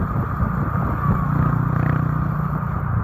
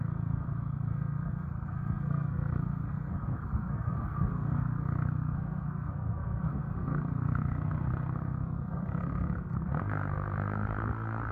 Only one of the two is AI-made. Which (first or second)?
second